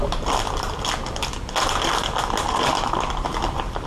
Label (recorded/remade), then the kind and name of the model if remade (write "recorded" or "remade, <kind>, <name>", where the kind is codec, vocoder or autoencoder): recorded